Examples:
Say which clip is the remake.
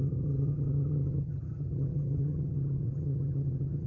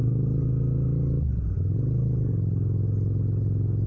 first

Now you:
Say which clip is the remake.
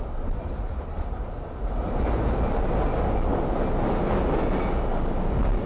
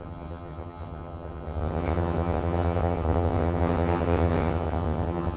second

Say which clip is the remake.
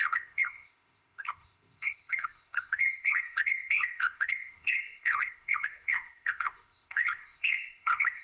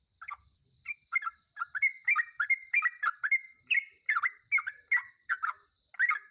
first